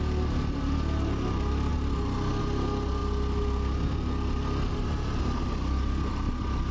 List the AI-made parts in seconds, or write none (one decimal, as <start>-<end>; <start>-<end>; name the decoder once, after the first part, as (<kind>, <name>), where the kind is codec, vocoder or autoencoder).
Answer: none